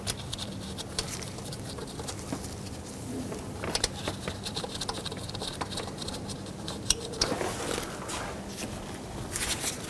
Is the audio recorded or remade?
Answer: remade